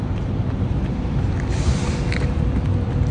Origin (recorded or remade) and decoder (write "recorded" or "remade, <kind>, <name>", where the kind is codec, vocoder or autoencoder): remade, vocoder, BigVGAN v2